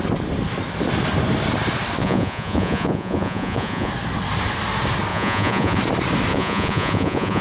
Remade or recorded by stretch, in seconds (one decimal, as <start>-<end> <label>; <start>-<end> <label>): 0.0-2.0 recorded; 2.0-3.9 remade; 3.9-5.1 recorded; 5.1-5.8 remade; 5.8-6.3 recorded; 6.3-7.4 remade